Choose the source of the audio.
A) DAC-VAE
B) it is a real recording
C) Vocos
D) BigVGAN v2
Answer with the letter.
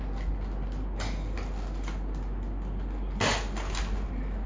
B